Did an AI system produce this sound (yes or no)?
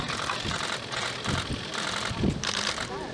no